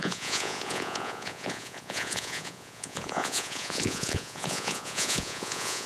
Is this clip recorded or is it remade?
remade